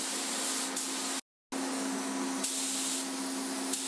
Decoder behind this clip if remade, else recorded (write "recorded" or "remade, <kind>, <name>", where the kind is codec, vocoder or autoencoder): recorded